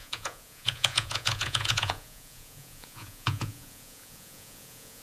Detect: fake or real fake